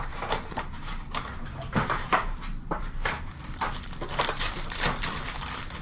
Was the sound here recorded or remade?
remade